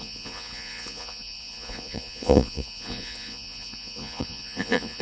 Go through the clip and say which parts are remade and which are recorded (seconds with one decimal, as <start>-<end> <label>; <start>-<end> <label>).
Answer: 0.0-5.0 remade